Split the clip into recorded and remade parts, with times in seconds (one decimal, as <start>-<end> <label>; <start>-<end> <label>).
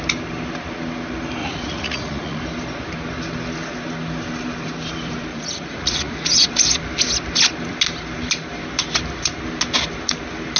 0.0-1.4 recorded; 1.4-2.4 remade; 2.4-5.3 recorded; 5.3-6.5 remade; 6.5-10.6 recorded